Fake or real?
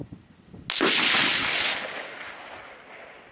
real